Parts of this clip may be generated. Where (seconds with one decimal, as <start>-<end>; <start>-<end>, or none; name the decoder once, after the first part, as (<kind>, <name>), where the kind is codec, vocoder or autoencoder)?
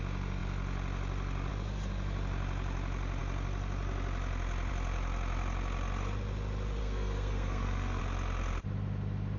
6.8-8.0 (codec, SNAC)